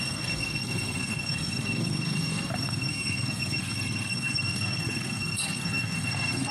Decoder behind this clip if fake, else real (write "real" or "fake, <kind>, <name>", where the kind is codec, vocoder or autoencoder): fake, codec, SNAC